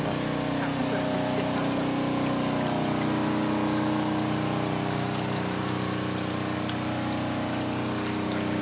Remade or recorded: recorded